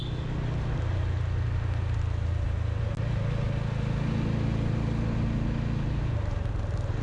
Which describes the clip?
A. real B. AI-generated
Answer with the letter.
A